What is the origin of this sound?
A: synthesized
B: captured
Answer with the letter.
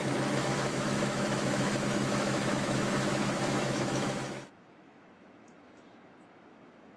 A